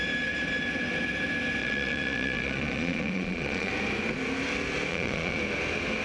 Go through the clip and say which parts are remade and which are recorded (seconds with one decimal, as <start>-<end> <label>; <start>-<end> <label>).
0.0-1.6 recorded; 1.6-3.7 remade; 3.7-4.9 recorded; 4.9-5.4 remade; 5.4-6.0 recorded